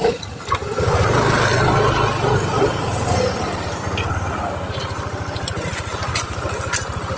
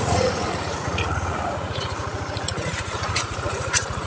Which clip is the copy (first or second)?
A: second